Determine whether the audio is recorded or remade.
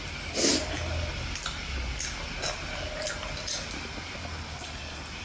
recorded